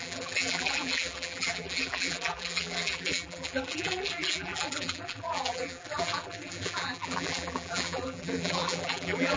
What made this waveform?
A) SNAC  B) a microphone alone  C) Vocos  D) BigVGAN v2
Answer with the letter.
D